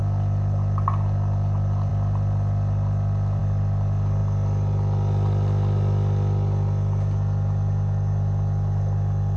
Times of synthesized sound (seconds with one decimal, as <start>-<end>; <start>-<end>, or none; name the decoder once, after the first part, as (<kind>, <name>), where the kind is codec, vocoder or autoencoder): none